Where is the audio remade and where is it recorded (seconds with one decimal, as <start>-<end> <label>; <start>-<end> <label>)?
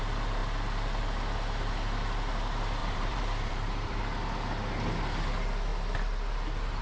0.0-2.8 recorded; 2.8-4.0 remade; 4.0-6.8 recorded